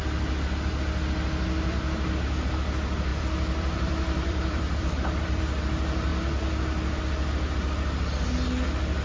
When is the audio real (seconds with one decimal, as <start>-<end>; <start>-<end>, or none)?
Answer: 0.0-3.1; 5.4-9.0